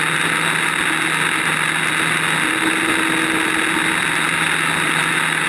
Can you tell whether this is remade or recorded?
recorded